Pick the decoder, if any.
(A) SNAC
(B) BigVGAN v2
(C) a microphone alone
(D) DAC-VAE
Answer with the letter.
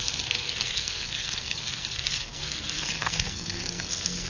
A